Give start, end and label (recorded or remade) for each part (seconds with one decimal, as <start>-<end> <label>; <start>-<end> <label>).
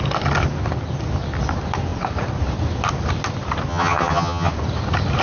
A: 0.0-3.7 recorded; 3.7-4.5 remade; 4.5-5.2 recorded